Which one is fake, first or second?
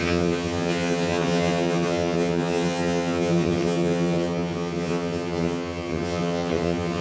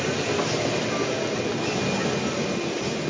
first